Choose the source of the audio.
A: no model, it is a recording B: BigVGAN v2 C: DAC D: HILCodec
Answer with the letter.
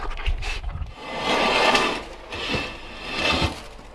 A